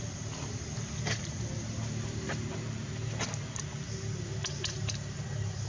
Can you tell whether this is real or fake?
real